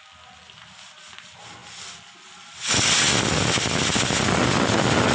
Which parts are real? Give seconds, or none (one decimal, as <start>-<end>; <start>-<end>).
0.0-5.1